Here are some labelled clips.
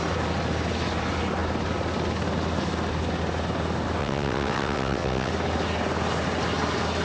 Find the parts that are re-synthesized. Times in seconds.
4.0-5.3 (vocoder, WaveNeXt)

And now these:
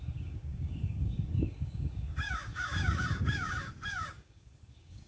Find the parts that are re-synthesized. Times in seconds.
0.0-5.1 (codec, DAC)

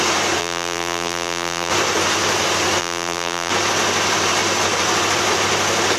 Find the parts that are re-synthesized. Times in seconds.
0.4-1.7 (vocoder, BigVGAN v2); 2.8-3.5